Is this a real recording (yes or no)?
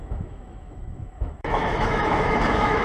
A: no